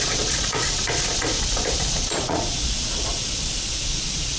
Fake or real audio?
fake